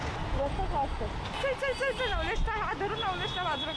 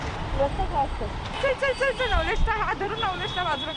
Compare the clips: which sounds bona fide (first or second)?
first